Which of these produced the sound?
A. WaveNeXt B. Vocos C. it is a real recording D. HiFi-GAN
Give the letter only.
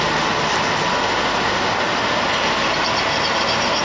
C